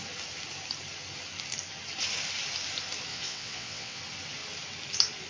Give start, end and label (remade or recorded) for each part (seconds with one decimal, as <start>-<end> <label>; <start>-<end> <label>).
0.0-3.1 recorded; 3.1-4.0 remade; 4.0-5.3 recorded